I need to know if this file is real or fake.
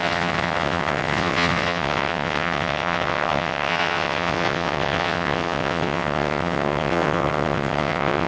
fake